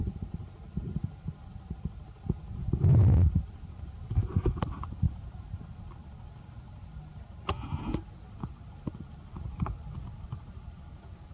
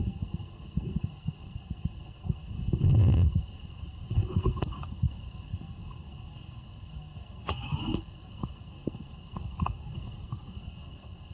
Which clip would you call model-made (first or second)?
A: second